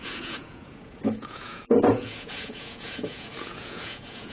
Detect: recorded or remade remade